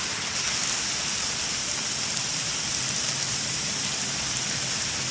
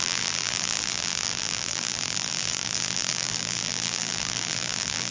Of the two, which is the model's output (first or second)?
second